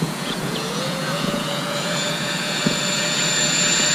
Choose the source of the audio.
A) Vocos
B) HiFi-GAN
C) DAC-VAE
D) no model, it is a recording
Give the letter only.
A